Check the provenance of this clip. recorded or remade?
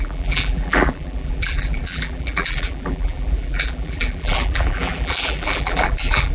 remade